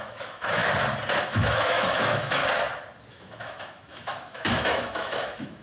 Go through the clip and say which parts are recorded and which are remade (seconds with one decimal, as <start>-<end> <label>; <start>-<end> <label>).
0.0-0.6 remade; 0.6-1.2 recorded; 1.2-2.4 remade; 2.4-3.1 recorded; 3.1-5.6 remade